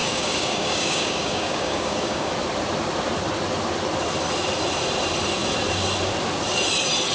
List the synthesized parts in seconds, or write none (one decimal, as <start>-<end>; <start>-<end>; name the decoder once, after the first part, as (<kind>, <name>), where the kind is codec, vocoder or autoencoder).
0.0-2.3 (codec, DAC)